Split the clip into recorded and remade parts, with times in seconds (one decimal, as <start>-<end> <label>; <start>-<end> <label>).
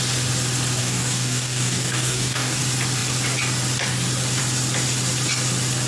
0.0-0.8 recorded; 0.8-2.6 remade; 2.6-5.9 recorded